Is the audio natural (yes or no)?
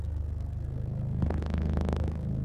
no